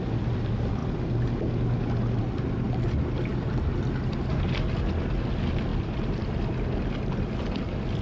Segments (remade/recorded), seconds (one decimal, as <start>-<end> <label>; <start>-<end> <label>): 0.0-8.0 recorded